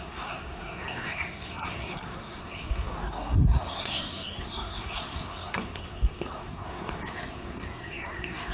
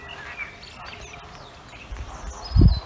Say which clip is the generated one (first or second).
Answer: first